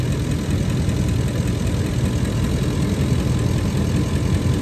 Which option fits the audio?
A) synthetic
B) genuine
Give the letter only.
B